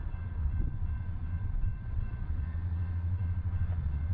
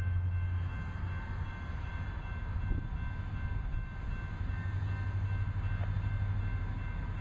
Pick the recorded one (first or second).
second